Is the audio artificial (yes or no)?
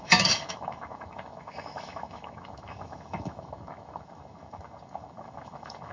yes